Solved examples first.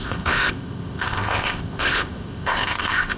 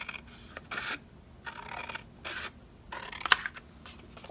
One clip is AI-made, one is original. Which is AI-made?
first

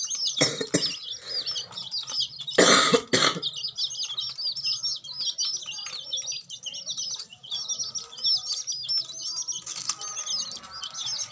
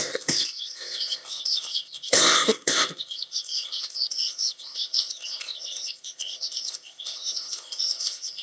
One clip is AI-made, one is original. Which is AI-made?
second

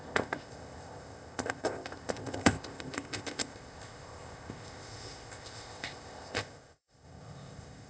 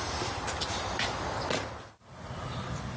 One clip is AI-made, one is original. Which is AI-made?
first